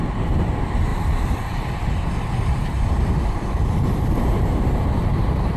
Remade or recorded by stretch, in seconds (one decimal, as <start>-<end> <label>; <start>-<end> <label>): 0.0-5.6 remade